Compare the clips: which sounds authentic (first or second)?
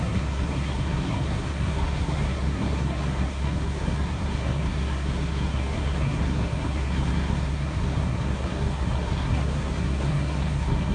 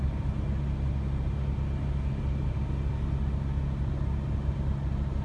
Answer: second